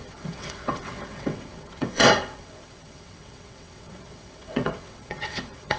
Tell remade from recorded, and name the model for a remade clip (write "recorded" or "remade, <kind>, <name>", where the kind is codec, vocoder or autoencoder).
remade, vocoder, WaveNeXt